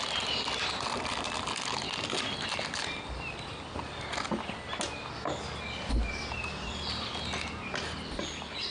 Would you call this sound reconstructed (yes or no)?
no